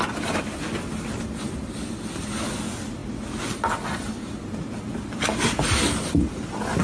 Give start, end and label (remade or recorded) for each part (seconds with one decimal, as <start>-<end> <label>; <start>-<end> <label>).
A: 0.0-6.8 recorded